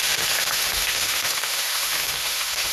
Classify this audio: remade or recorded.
remade